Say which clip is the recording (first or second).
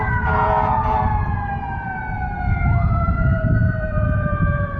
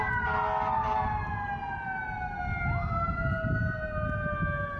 second